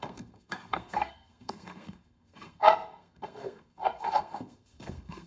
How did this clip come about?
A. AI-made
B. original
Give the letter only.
A